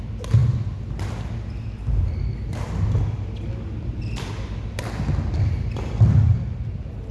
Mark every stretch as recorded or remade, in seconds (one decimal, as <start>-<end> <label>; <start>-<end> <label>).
0.0-7.1 recorded